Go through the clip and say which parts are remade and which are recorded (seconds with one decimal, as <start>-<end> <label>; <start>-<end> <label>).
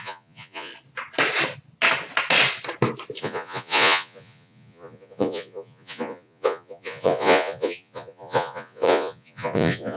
0.0-0.7 remade; 0.7-3.2 recorded; 3.2-10.0 remade